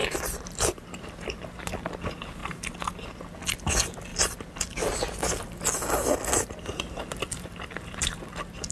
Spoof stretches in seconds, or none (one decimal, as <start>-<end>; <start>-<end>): 0.0-1.4